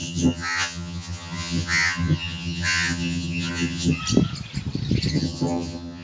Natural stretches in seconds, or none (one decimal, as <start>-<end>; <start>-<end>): 4.0-5.1